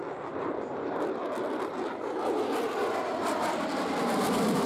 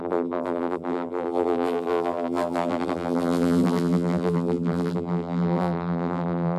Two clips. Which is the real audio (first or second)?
first